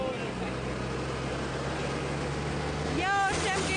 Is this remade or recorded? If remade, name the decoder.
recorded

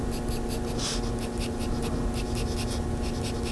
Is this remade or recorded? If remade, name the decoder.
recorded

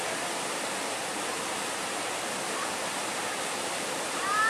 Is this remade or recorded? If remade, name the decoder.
recorded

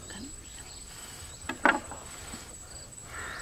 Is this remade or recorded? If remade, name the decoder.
recorded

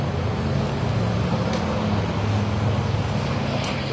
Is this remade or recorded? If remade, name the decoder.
recorded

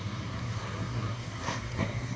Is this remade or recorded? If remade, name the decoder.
remade, codec, SNAC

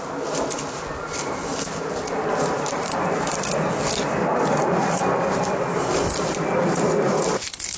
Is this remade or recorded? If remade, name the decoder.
recorded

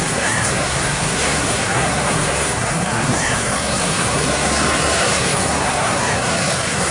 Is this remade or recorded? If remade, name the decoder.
remade, codec, SNAC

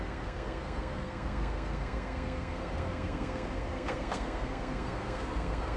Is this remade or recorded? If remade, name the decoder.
remade, codec, SNAC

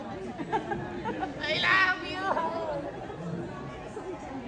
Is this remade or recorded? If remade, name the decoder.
recorded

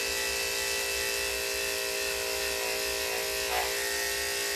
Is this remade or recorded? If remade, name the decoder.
recorded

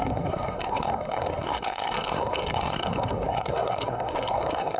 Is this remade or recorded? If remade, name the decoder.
remade, codec, SNAC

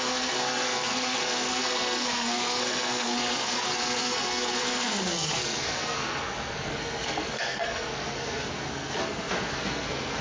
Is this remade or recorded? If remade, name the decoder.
remade, codec, SNAC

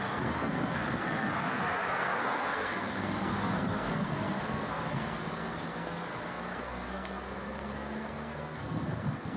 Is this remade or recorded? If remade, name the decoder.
remade, codec, SNAC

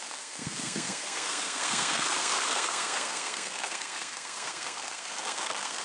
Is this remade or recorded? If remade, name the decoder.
remade, codec, SNAC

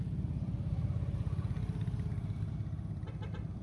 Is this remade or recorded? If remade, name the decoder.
recorded